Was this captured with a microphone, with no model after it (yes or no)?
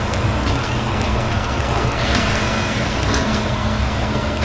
no